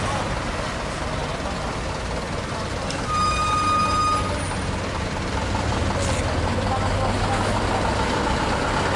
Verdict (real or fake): real